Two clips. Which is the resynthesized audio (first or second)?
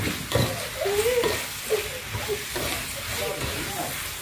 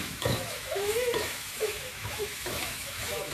second